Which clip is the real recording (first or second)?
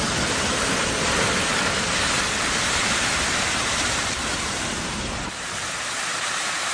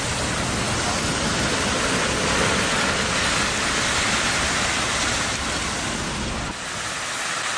second